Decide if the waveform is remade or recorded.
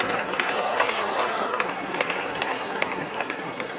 remade